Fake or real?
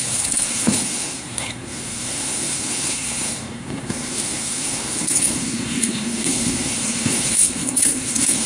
fake